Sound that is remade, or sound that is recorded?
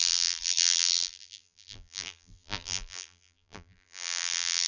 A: remade